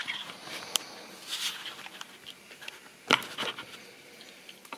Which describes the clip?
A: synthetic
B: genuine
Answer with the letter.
B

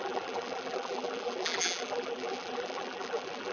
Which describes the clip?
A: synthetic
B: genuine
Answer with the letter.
A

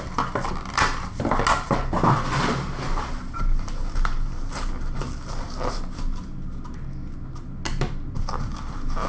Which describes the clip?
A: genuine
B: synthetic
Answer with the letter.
A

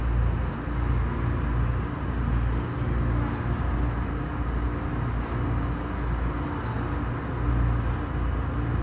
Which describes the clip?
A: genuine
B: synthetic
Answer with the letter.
A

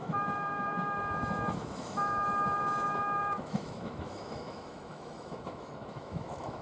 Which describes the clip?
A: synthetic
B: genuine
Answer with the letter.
A